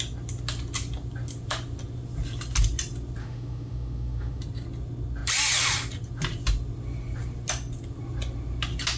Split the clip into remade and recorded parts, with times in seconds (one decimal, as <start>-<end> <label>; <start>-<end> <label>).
0.0-3.2 recorded; 3.2-4.4 remade; 4.4-9.0 recorded